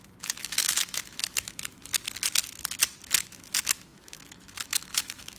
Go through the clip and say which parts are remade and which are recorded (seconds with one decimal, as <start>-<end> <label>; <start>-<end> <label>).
0.0-1.9 remade; 1.9-3.2 recorded; 3.2-5.4 remade